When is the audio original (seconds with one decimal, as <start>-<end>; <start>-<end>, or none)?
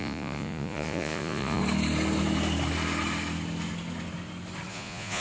1.6-4.7